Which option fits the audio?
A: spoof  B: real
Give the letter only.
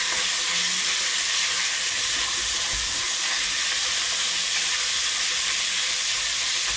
A